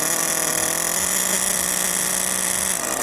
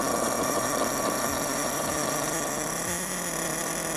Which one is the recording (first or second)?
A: first